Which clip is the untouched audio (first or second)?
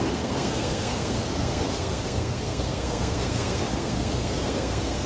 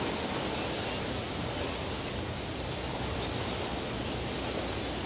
second